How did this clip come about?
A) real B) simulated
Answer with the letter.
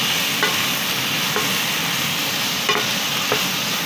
A